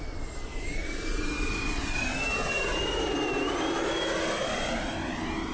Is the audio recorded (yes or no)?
yes